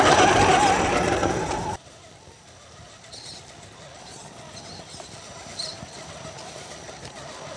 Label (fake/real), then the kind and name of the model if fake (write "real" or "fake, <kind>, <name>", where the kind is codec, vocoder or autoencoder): real